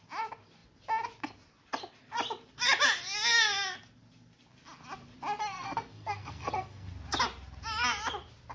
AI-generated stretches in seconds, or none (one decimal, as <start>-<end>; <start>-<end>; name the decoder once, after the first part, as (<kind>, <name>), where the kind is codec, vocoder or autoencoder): 5.4-6.9 (codec, SNAC)